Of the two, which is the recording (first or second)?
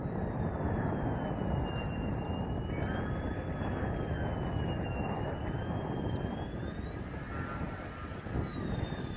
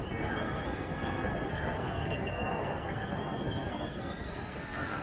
first